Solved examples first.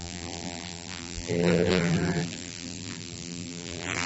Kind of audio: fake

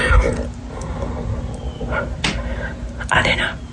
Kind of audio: real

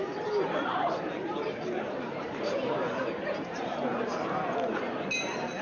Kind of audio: fake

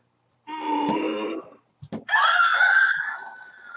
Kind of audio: real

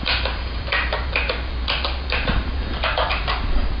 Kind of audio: fake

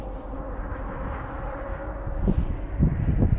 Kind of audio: real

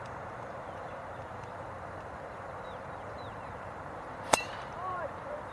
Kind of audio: fake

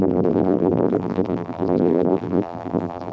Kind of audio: fake